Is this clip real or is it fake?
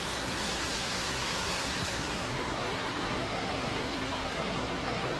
fake